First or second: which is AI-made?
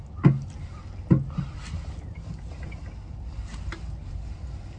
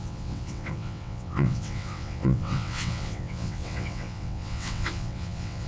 second